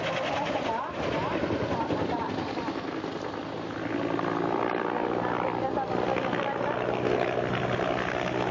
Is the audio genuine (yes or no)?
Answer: yes